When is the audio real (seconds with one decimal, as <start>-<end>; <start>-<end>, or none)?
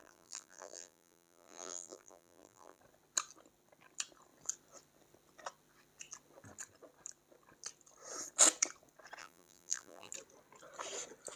2.8-9.2; 10.1-11.4